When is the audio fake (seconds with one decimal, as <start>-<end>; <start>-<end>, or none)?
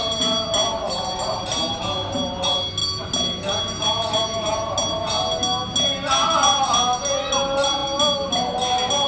none